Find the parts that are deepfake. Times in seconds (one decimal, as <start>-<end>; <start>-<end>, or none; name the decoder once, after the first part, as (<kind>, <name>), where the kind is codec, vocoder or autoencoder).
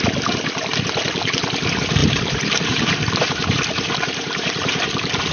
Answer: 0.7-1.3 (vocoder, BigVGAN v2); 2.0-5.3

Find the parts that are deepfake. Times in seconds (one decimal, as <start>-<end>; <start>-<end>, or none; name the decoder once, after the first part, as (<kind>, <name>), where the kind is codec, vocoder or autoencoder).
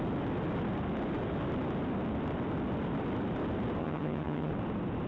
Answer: 3.8-4.5 (vocoder, HiFi-GAN)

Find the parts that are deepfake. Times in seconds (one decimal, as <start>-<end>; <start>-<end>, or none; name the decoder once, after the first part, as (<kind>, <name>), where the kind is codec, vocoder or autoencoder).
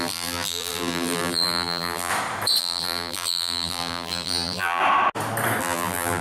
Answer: 0.0-2.1 (vocoder, BigVGAN v2); 2.6-4.8; 5.6-6.2